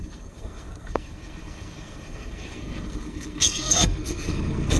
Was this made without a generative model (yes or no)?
no